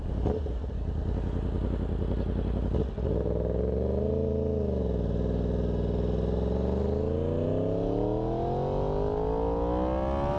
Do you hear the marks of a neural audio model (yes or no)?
no